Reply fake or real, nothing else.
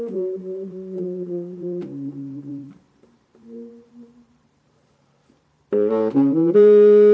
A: fake